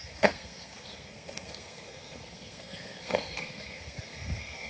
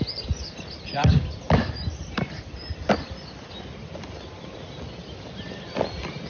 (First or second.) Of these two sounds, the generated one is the first